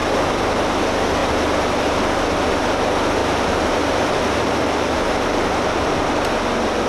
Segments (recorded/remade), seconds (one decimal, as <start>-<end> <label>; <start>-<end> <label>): 0.0-1.2 recorded; 1.2-2.6 remade; 2.6-3.2 recorded; 3.2-6.1 remade; 6.1-6.9 recorded

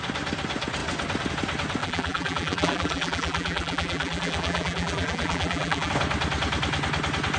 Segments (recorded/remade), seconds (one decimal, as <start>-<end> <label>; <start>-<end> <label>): 0.0-1.8 recorded; 1.8-5.9 remade; 5.9-7.4 recorded